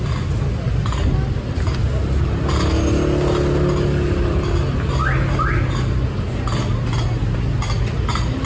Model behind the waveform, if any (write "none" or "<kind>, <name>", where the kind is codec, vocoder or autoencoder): none